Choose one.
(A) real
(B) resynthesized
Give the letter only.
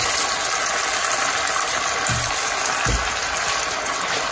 A